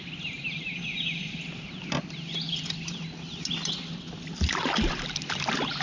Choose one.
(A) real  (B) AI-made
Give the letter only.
B